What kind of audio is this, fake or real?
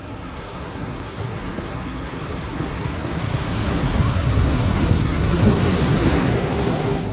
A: fake